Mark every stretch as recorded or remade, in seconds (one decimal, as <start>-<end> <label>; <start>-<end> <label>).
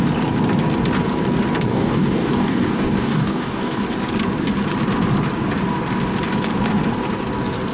0.0-1.7 recorded; 1.7-3.8 remade; 3.8-7.7 recorded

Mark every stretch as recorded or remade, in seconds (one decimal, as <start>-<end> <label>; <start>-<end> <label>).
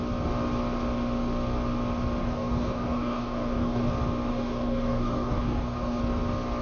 0.0-2.2 recorded; 2.2-3.9 remade; 3.9-4.3 recorded; 4.3-6.0 remade; 6.0-6.6 recorded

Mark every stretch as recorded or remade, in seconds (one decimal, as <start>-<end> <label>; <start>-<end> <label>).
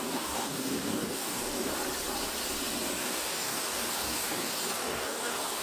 0.0-1.7 remade; 1.7-3.0 recorded; 3.0-5.6 remade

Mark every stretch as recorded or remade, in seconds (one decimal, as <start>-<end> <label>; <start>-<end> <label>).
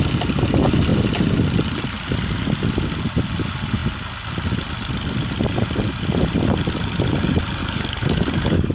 0.0-7.6 recorded; 7.6-8.7 remade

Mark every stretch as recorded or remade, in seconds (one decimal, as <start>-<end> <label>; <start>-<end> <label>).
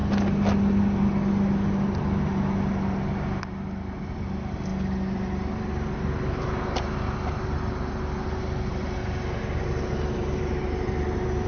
0.0-11.5 recorded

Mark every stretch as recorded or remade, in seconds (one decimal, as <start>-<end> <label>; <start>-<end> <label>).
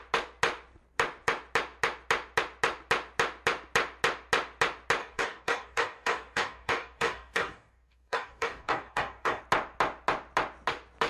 0.0-5.0 recorded; 5.0-9.4 remade; 9.4-11.1 recorded